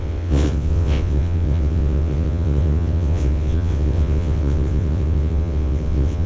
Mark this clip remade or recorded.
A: remade